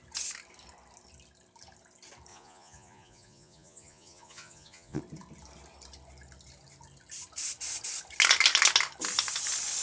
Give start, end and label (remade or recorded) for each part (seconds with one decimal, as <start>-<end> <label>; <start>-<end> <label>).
0.0-2.3 recorded; 2.3-5.0 remade; 5.0-9.8 recorded